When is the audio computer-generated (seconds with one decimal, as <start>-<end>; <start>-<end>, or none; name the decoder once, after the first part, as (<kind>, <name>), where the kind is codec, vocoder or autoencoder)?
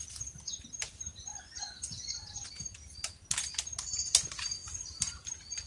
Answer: 1.3-2.5 (vocoder, Vocos)